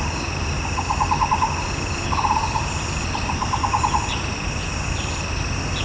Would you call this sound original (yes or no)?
yes